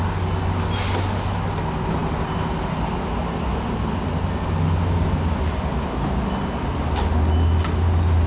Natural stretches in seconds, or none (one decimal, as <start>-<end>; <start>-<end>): 0.0-8.3